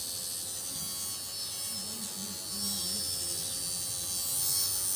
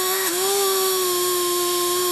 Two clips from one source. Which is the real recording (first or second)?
first